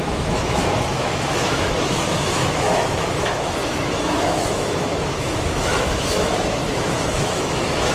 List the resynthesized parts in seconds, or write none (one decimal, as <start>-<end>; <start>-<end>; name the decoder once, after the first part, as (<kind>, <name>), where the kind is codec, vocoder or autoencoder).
0.0-7.9 (autoencoder, DAC-VAE)